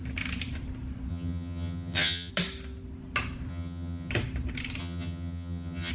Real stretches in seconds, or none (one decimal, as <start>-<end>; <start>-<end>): 0.0-1.1; 2.3-3.5; 4.1-4.8